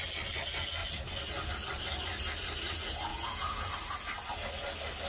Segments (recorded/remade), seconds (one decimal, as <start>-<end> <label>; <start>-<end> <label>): 0.0-3.1 recorded; 3.1-3.7 remade; 3.7-5.1 recorded